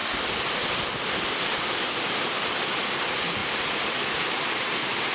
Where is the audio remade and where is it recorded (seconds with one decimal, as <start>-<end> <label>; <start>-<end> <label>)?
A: 0.0-3.4 recorded; 3.4-5.1 remade